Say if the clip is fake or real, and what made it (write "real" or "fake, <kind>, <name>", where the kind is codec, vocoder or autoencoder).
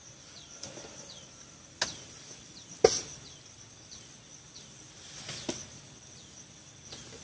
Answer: real